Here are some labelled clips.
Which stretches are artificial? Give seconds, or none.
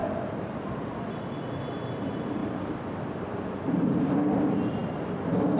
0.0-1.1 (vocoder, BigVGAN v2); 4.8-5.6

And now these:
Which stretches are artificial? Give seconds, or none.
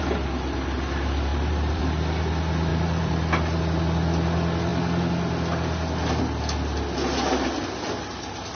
1.3-1.8 (vocoder, BigVGAN v2); 2.7-3.6